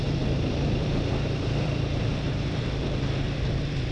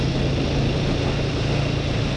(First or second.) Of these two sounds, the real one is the second